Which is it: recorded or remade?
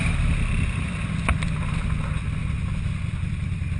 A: remade